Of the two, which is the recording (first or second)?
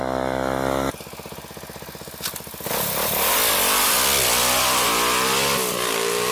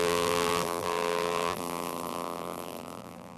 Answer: first